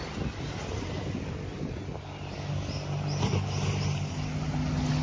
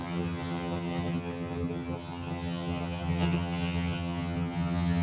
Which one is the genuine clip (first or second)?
first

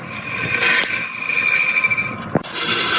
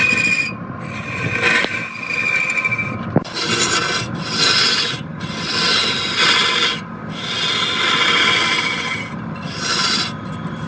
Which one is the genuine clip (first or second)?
second